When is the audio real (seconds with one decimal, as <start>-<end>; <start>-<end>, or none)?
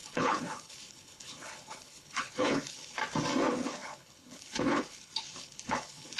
3.0-3.5